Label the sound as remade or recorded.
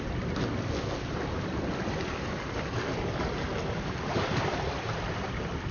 remade